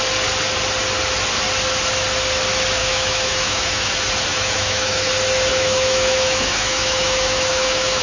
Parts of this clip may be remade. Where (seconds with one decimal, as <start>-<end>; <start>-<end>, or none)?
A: 2.8-3.9; 4.3-5.1; 5.5-8.0